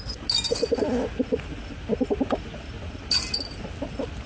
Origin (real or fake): real